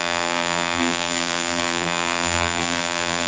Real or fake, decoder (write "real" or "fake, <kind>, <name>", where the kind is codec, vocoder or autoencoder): fake, vocoder, BigVGAN v2